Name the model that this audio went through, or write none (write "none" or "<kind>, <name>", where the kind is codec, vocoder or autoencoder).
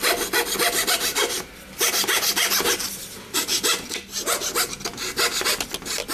none